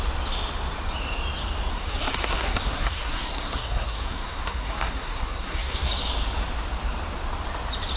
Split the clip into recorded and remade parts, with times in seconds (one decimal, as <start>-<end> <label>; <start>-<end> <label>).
0.0-1.7 recorded; 1.7-5.9 remade; 5.9-8.0 recorded